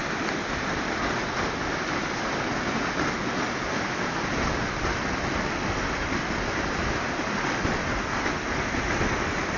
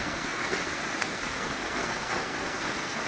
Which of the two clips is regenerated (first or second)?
second